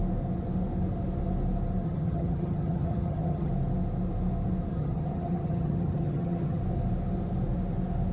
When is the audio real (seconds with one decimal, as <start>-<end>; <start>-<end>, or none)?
0.0-1.8; 3.5-4.7; 6.6-8.1